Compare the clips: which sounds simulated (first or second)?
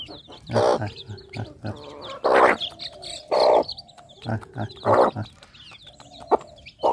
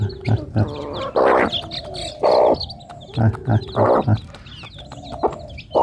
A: first